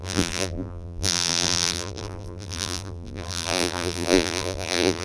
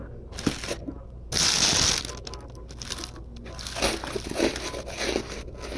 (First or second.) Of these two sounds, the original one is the second